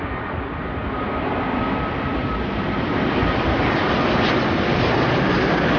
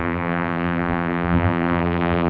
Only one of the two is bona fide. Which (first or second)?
first